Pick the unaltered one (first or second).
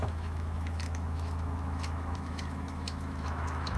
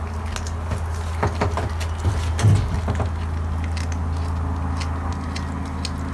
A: second